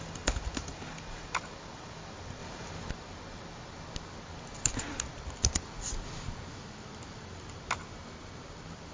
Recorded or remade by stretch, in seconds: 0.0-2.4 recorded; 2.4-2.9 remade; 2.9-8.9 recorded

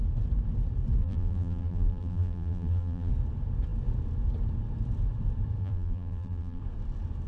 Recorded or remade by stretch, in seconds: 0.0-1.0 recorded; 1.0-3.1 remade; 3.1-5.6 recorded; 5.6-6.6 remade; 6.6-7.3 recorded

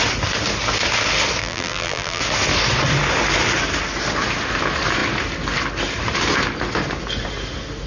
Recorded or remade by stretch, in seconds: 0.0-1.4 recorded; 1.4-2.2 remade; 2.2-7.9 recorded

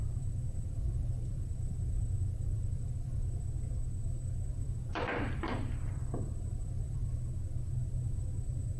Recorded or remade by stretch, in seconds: 0.0-3.4 remade; 3.4-4.5 recorded; 4.5-7.3 remade; 7.3-8.8 recorded

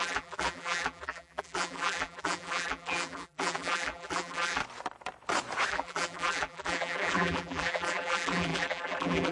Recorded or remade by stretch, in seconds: 0.0-4.6 remade; 4.6-5.7 recorded; 5.7-9.3 remade